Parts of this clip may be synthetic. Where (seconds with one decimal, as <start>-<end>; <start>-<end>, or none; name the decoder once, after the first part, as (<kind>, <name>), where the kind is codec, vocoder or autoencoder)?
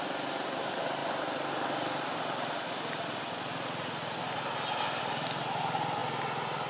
none